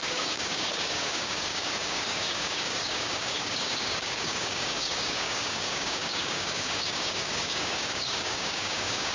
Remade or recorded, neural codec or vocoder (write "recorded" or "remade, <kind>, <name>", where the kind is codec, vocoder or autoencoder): remade, codec, DAC